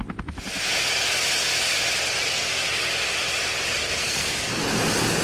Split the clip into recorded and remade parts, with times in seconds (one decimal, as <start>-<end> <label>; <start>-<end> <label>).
0.0-3.8 recorded; 3.8-4.5 remade; 4.5-5.2 recorded